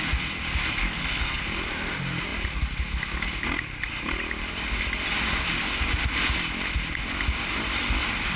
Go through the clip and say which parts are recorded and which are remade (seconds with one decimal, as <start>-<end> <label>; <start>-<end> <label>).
0.0-0.8 recorded; 0.8-1.4 remade; 1.4-8.4 recorded